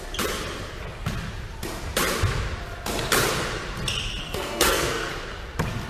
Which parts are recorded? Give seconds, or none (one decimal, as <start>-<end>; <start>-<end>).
0.0-4.2; 5.1-5.9